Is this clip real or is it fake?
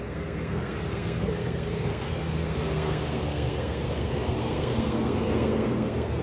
fake